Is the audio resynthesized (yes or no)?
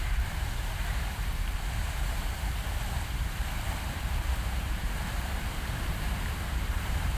yes